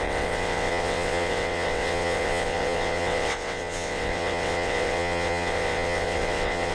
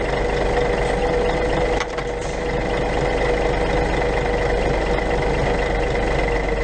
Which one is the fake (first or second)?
first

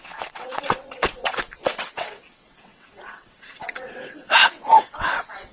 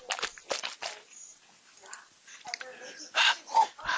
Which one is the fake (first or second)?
first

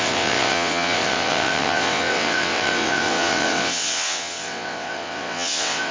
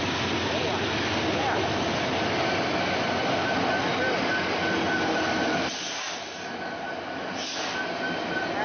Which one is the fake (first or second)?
first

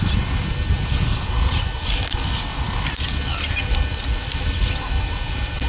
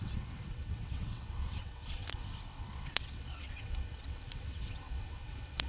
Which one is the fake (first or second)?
second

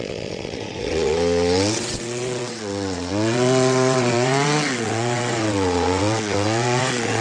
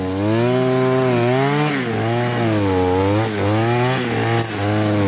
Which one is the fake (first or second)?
first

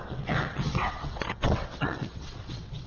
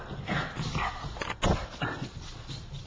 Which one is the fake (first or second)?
first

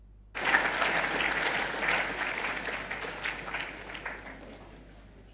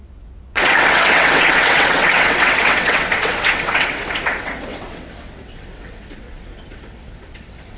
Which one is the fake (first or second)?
second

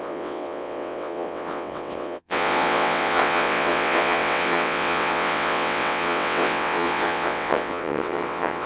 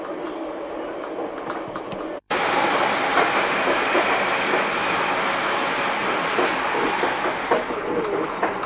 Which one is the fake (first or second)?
first